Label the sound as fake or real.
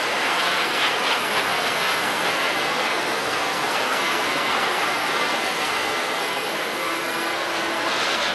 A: fake